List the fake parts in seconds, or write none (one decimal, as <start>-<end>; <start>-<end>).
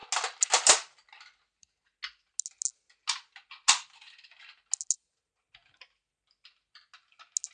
none